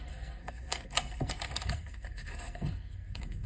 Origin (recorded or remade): remade